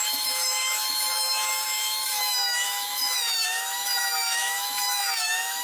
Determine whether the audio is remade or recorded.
remade